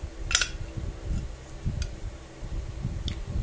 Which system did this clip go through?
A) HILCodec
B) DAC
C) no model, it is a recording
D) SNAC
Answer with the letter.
C